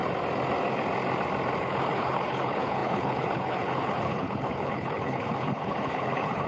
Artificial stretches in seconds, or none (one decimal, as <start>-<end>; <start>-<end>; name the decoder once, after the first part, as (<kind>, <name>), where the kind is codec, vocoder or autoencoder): 1.6-6.5 (codec, HILCodec)